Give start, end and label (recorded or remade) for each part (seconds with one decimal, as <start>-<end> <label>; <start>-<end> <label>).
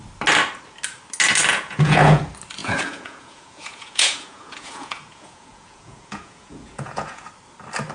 0.0-1.5 recorded; 1.5-2.2 remade; 2.2-2.6 recorded; 2.6-7.3 remade; 7.3-7.9 recorded